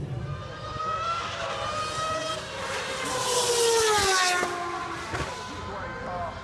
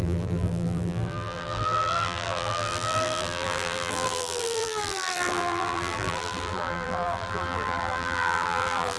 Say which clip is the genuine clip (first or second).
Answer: first